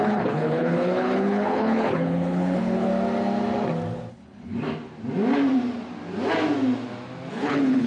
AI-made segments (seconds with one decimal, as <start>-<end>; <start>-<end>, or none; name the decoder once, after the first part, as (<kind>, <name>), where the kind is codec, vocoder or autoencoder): 0.0-2.9 (codec, HILCodec); 4.1-4.5; 7.3-7.9